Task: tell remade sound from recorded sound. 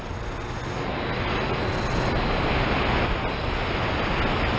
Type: recorded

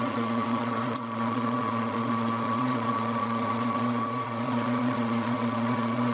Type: remade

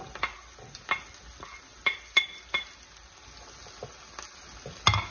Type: recorded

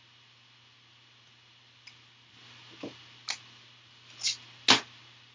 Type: recorded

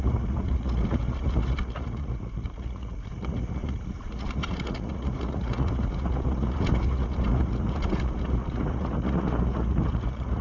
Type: remade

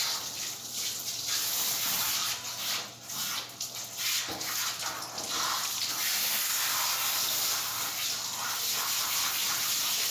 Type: recorded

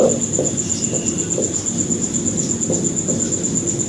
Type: recorded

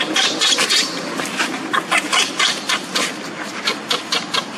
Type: recorded